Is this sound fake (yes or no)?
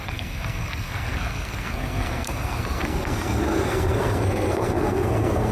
yes